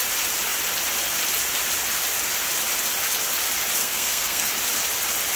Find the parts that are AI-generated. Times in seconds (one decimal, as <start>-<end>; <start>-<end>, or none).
3.8-4.5